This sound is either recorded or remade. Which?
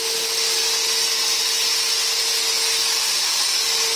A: recorded